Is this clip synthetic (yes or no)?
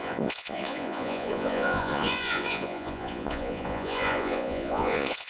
yes